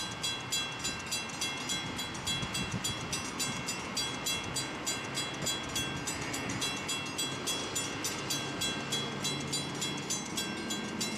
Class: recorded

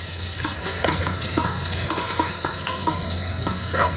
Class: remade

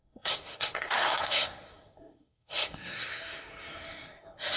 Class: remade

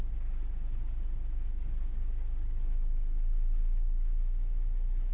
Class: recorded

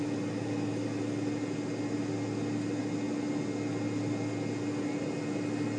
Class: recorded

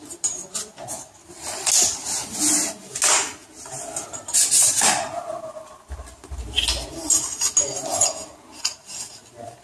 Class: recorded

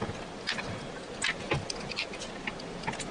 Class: recorded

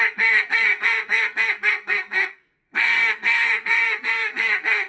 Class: remade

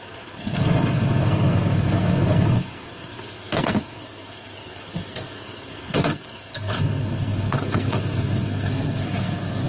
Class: remade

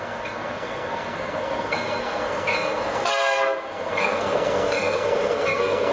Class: remade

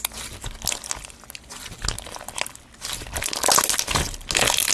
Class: recorded